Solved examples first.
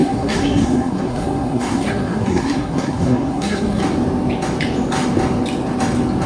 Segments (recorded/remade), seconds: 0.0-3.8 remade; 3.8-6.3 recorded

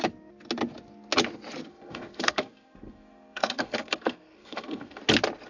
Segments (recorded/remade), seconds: 0.0-1.7 recorded; 1.7-5.0 remade; 5.0-5.5 recorded

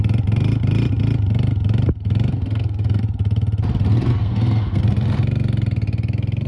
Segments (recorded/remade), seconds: 0.0-2.3 recorded; 2.3-3.0 remade; 3.0-4.2 recorded; 4.2-4.8 remade; 4.8-6.5 recorded

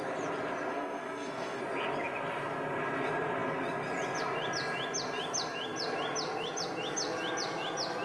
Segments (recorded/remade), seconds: 0.0-0.7 recorded; 0.7-1.6 remade; 1.6-8.0 recorded

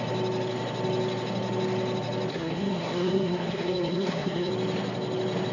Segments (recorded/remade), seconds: 0.0-2.3 recorded; 2.3-4.5 remade; 4.5-5.5 recorded

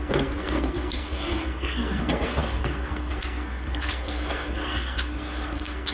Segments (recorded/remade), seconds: 0.0-5.9 remade